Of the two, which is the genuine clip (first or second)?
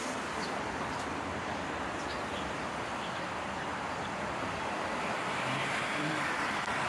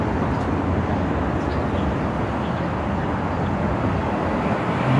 second